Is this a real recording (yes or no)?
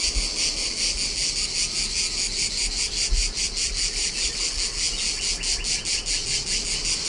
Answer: yes